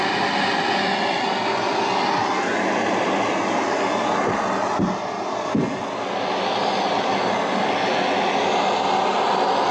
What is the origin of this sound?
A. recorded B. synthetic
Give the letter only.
A